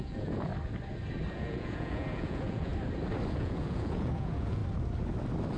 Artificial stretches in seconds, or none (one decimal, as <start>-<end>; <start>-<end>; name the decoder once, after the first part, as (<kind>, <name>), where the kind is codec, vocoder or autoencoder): 0.0-0.5 (vocoder, Vocos); 1.3-2.7; 3.3-4.6